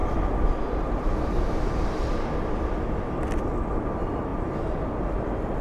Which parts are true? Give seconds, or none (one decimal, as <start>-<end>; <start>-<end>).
0.0-4.3; 4.8-5.6

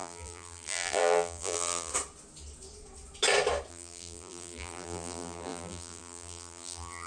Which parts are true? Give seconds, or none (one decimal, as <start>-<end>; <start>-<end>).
1.9-3.7

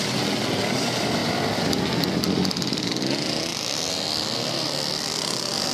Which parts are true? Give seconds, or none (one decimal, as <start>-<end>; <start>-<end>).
0.0-3.5; 4.5-5.7

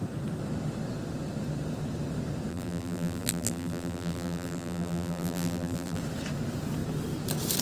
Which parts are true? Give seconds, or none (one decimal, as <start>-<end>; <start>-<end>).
0.0-2.5; 6.0-7.6

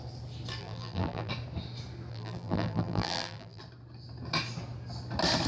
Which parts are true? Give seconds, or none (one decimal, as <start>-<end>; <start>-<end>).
0.0-0.6; 1.3-2.1; 3.6-5.5